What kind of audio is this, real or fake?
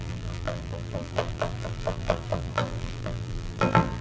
fake